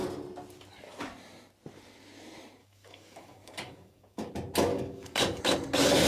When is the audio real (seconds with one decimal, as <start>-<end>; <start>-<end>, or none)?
0.0-2.6; 4.3-4.7; 5.4-6.1